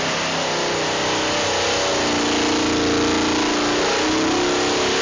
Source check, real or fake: real